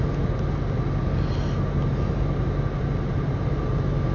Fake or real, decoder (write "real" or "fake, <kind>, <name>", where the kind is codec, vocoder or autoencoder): real